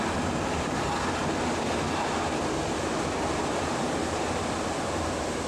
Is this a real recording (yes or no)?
yes